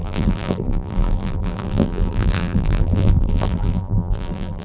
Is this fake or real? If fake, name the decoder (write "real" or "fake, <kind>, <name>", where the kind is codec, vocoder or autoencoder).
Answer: fake, vocoder, BigVGAN v2